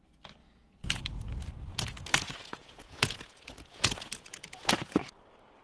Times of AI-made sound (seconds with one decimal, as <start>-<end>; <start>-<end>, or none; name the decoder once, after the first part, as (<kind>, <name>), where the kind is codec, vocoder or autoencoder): 0.4-1.0 (vocoder, Vocos); 1.7-5.1